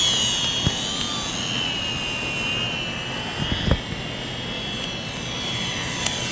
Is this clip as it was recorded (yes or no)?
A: yes